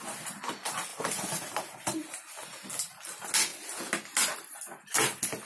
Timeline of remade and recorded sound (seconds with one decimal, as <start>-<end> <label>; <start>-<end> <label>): 0.0-0.9 recorded; 0.9-2.2 remade; 2.2-5.4 recorded